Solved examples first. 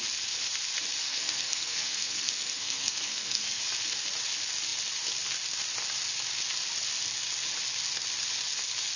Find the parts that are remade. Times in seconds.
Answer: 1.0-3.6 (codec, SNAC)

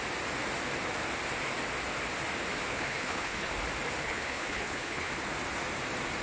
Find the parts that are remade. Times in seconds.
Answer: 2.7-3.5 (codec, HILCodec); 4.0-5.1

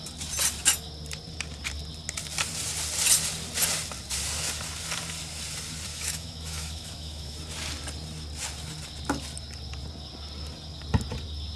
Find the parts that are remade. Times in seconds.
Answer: 5.9-7.4 (autoencoder, DAC-VAE)

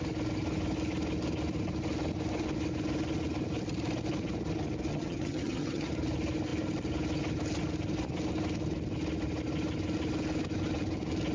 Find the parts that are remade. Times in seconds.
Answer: 4.9-5.9 (vocoder, HiFi-GAN)

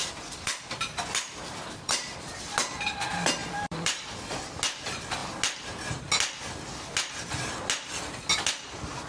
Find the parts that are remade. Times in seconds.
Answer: 0.0-2.3 (vocoder, BigVGAN v2); 3.4-4.4